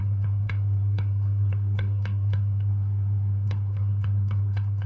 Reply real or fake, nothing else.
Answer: fake